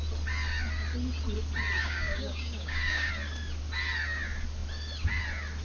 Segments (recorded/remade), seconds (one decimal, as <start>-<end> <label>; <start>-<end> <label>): 0.0-1.8 recorded; 1.8-3.1 remade; 3.1-5.6 recorded